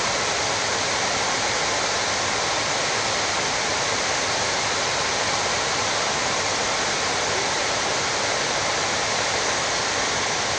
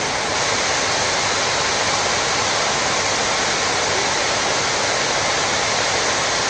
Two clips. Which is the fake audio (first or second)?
first